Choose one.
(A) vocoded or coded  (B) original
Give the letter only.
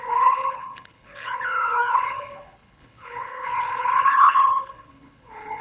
A